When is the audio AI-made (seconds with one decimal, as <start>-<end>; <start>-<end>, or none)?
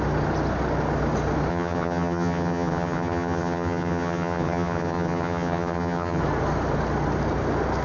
1.5-6.2